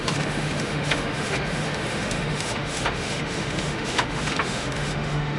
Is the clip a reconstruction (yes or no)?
yes